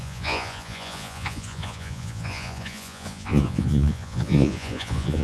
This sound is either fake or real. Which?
fake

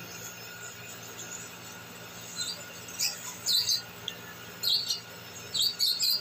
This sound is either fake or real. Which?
real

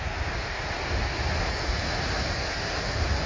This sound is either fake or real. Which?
real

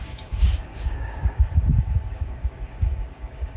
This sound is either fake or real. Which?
fake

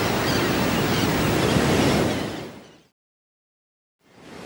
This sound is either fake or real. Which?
real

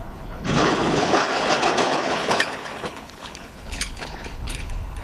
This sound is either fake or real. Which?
fake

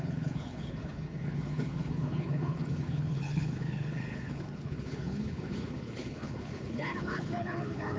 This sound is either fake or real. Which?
fake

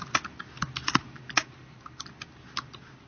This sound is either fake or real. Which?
real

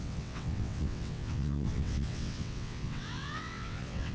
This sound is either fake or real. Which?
fake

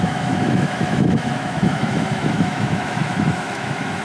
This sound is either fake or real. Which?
fake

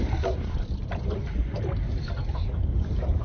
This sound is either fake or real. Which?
real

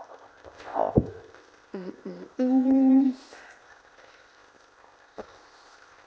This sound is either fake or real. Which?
fake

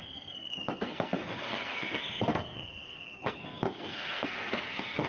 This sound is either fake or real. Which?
fake